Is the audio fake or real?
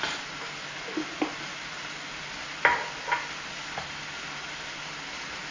real